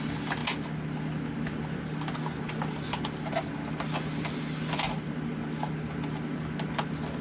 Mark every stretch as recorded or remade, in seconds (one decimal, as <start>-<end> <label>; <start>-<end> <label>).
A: 0.0-7.2 recorded